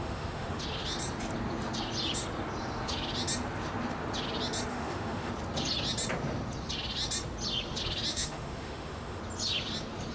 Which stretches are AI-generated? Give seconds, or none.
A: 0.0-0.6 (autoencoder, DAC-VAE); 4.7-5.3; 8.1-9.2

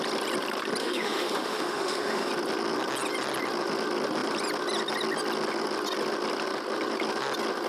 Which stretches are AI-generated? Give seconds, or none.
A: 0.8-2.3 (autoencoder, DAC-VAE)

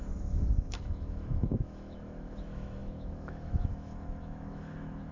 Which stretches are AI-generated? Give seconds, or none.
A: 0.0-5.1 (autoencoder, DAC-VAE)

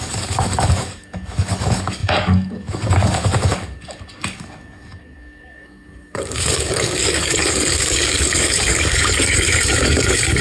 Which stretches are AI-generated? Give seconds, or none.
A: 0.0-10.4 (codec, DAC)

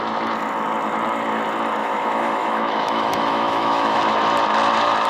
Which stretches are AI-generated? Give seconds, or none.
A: 1.8-4.0 (autoencoder, DAC-VAE)

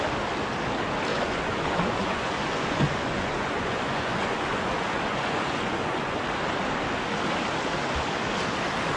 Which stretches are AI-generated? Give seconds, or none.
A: 1.1-6.2 (vocoder, Vocos)

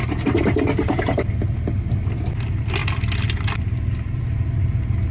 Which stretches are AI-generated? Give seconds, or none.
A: none